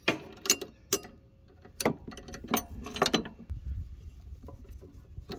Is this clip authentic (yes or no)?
yes